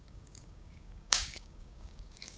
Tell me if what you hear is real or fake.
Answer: fake